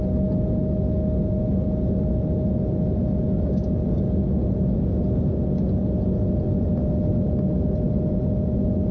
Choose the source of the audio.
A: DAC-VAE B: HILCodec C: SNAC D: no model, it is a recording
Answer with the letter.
D